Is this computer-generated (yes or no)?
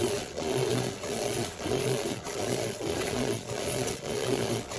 yes